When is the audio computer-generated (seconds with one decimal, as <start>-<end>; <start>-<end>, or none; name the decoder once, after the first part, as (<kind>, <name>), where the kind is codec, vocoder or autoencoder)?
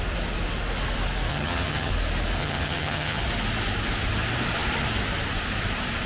1.3-1.9 (vocoder, HiFi-GAN); 2.4-3.2